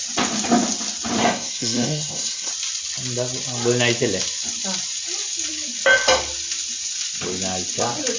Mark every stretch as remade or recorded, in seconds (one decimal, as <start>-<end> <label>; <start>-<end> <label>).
0.0-1.2 recorded; 1.2-2.5 remade; 2.5-8.2 recorded